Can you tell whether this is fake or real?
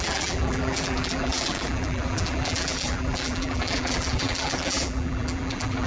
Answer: fake